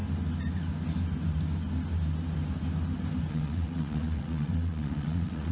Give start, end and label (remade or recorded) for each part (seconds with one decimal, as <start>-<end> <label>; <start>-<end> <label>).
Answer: 0.0-3.3 recorded; 3.3-5.5 remade